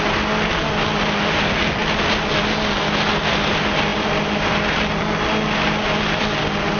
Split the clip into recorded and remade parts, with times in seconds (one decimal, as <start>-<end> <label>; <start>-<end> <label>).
0.0-6.8 recorded

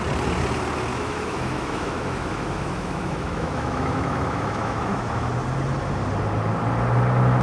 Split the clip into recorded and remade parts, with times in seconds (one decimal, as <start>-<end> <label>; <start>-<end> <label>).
0.0-0.9 recorded; 0.9-5.3 remade; 5.3-7.4 recorded

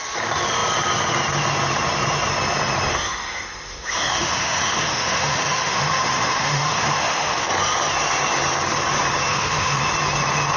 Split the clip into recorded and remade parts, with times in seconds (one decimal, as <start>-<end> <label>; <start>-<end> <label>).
0.0-2.9 recorded; 2.9-7.5 remade; 7.5-9.3 recorded; 9.3-9.8 remade; 9.8-10.6 recorded

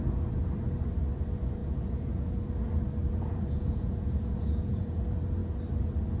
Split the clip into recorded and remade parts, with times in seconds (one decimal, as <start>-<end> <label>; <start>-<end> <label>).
0.0-1.6 recorded; 1.6-2.4 remade; 2.4-3.0 recorded; 3.0-5.0 remade; 5.0-6.2 recorded

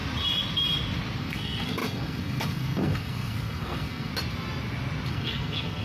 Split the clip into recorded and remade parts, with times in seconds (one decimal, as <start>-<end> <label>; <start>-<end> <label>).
0.0-1.2 recorded; 1.2-4.1 remade; 4.1-5.1 recorded; 5.1-5.8 remade